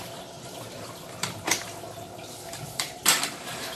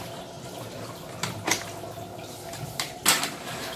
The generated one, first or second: first